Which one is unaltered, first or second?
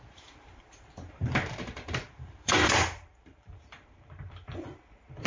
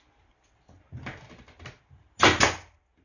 second